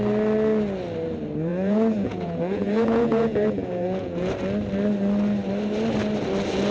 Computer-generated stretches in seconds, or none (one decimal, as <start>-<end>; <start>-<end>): 1.5-4.3